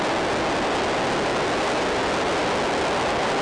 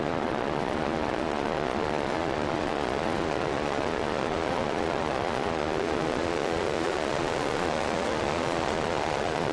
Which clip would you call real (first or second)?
first